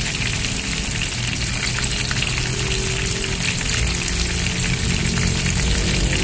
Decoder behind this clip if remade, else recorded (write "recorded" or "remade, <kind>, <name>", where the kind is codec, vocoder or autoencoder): recorded